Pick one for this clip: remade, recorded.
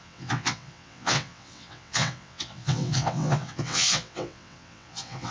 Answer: remade